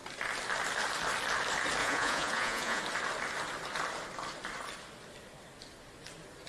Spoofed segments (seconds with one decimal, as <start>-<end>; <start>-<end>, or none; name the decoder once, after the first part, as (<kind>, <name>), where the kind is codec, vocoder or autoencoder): 1.8-2.8 (vocoder, Vocos)

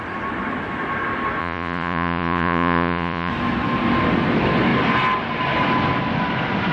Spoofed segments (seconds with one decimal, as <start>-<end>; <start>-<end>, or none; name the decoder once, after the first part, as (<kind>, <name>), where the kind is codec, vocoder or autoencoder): 1.4-3.3 (vocoder, Vocos)

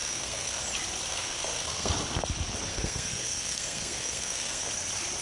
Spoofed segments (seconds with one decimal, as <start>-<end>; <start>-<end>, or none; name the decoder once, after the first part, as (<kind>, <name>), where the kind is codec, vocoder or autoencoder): 0.0-0.6 (codec, SNAC); 1.1-1.9; 2.7-4.7

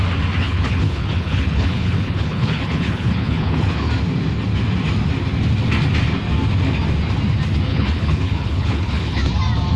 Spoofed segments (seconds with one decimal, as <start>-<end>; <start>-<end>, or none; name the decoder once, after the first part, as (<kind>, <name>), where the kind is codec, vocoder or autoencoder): 0.4-3.9 (codec, HILCodec); 7.7-9.2